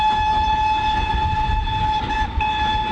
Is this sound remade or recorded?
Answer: recorded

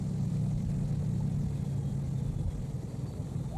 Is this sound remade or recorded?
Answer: recorded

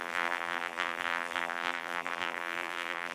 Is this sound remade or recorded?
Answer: remade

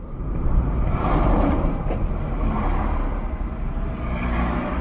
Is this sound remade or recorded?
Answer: remade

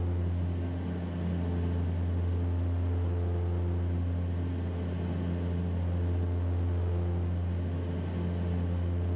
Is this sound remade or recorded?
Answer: recorded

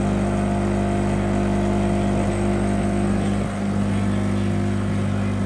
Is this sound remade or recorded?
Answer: recorded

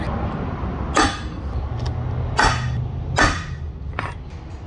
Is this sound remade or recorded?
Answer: recorded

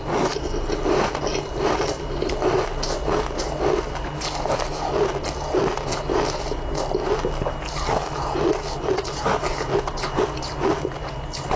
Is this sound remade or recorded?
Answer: recorded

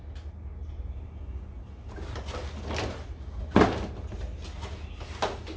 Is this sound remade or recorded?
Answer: recorded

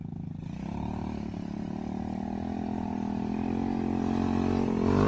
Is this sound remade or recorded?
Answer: recorded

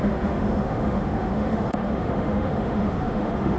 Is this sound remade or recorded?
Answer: remade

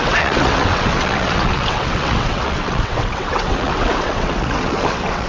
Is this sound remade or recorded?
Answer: remade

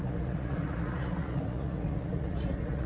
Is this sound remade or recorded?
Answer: remade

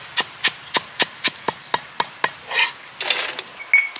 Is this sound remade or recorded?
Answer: recorded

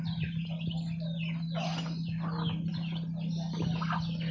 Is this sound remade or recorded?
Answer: recorded